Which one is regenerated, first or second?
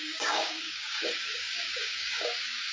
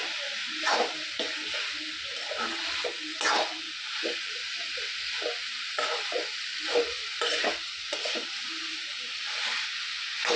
first